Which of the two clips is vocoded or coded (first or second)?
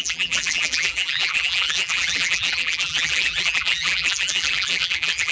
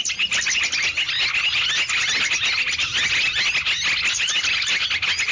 first